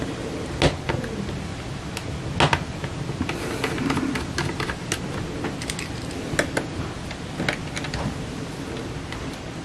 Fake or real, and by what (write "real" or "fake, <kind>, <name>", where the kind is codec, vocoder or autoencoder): real